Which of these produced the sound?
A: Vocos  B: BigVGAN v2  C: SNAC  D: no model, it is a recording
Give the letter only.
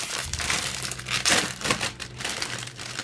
B